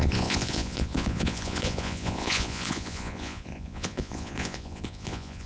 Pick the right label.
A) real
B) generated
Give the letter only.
B